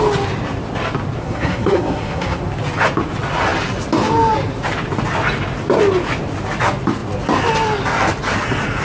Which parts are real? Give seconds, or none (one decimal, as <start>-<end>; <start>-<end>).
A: 0.0-1.2; 2.4-8.8